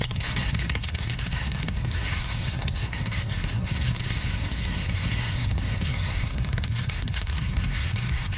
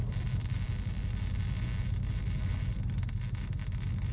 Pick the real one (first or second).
second